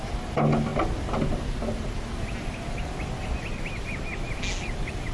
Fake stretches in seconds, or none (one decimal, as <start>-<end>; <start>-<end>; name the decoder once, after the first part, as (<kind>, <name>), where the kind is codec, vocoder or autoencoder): none